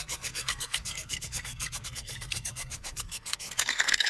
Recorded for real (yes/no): no